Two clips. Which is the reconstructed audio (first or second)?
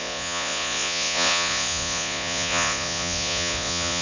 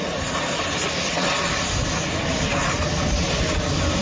first